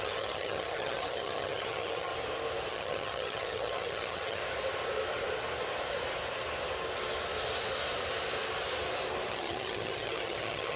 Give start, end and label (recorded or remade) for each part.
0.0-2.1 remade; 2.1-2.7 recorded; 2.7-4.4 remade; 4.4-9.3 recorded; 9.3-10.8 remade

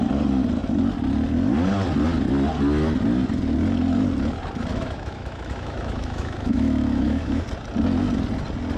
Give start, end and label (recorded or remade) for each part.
0.0-4.7 recorded; 4.7-7.4 remade; 7.4-8.8 recorded

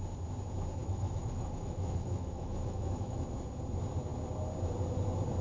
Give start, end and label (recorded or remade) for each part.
0.0-0.8 recorded; 0.8-3.2 remade; 3.2-5.4 recorded

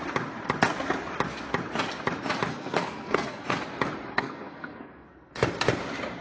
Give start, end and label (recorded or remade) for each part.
0.0-2.5 recorded; 2.5-3.5 remade; 3.5-4.1 recorded; 4.1-5.3 remade; 5.3-6.2 recorded

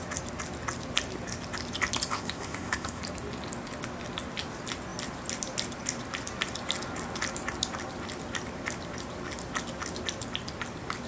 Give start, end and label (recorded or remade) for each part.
0.0-2.1 recorded; 2.1-3.0 remade; 3.0-11.1 recorded

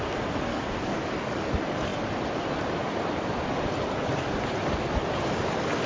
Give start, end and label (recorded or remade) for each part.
0.0-0.5 recorded; 0.5-1.5 remade; 1.5-5.9 recorded

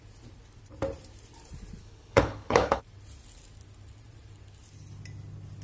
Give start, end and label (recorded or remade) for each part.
0.0-1.8 recorded; 1.8-2.8 remade; 2.8-5.6 recorded

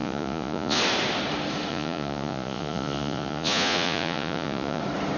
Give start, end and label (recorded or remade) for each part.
0.0-0.8 remade; 0.8-1.7 recorded; 1.7-4.8 remade; 4.8-5.2 recorded